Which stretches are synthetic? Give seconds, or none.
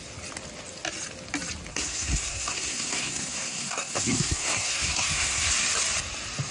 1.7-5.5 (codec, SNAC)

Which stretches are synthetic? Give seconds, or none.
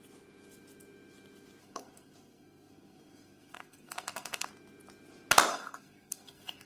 1.6-4.5 (codec, SNAC); 5.5-6.7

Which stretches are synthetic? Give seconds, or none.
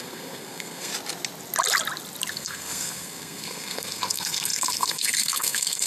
0.0-0.9 (codec, SNAC); 2.3-5.9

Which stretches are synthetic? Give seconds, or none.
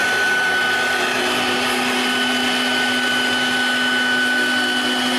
none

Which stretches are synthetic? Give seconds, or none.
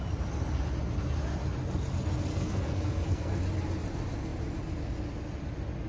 2.3-3.4 (codec, SNAC)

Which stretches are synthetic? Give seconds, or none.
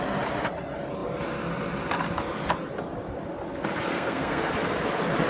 3.9-4.5 (codec, SNAC)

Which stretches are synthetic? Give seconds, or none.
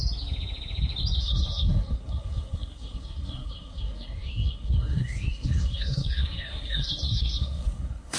1.2-8.2 (codec, SNAC)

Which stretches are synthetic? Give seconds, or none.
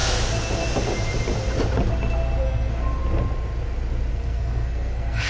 2.4-3.0 (codec, SNAC); 4.1-5.3